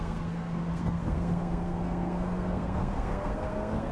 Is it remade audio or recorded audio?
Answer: remade